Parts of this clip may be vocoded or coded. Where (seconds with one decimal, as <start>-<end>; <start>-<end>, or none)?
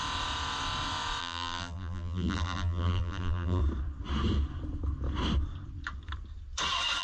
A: 1.2-3.6